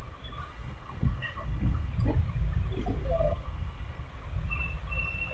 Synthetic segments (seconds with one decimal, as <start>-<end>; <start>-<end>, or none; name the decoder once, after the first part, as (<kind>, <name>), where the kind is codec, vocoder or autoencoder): 0.5-1.9 (codec, SNAC); 3.0-4.1